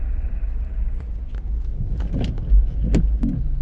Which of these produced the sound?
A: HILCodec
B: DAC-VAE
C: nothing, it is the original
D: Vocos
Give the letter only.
C